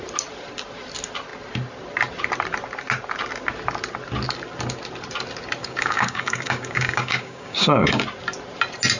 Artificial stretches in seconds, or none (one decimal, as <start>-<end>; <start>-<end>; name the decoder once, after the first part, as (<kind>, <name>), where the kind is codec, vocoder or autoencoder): 5.6-8.0 (codec, DAC)